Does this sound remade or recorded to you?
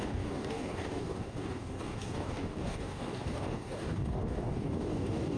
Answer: remade